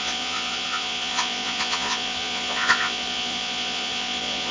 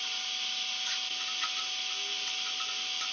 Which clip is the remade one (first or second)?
first